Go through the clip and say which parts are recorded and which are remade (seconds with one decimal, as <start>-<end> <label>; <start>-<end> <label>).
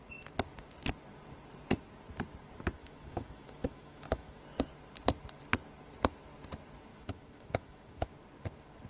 0.0-2.8 recorded; 2.8-4.4 remade; 4.4-6.9 recorded; 6.9-8.1 remade; 8.1-8.9 recorded